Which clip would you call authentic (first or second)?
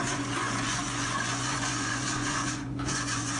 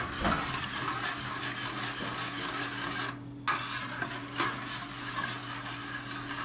second